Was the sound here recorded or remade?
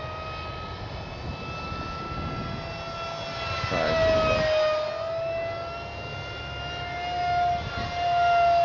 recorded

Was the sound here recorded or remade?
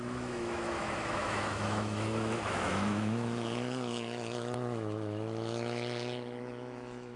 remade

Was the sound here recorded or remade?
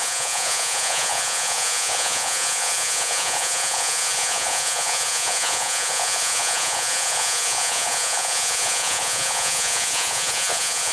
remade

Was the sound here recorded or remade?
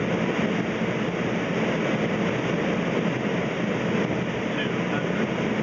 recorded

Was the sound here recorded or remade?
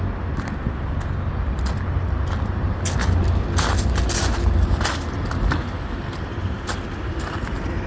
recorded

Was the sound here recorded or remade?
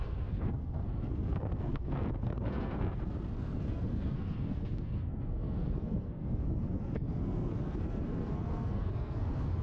remade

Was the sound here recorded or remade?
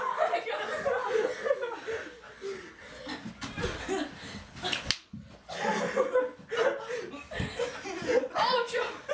recorded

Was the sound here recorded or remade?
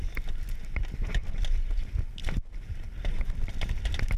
recorded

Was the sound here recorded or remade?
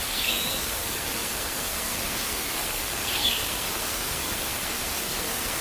remade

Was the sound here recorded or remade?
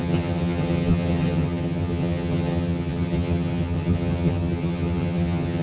remade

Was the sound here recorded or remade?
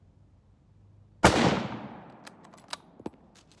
recorded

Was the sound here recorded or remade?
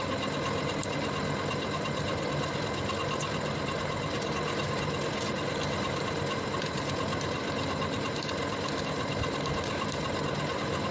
recorded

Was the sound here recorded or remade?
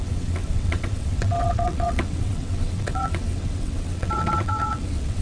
remade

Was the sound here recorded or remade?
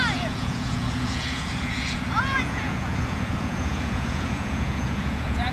remade